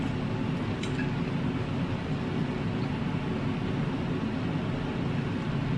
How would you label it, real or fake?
real